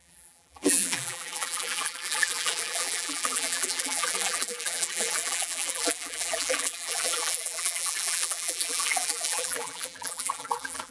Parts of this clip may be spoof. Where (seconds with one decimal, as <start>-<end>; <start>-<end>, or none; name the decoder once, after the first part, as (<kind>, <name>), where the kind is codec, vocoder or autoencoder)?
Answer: 0.0-10.9 (vocoder, BigVGAN v2)